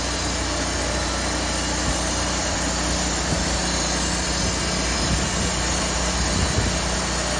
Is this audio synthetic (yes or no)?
no